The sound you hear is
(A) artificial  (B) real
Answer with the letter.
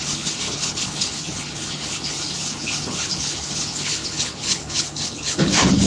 A